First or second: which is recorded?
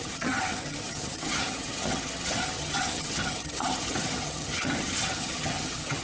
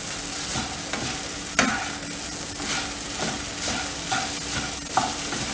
second